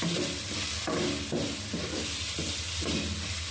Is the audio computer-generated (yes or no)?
no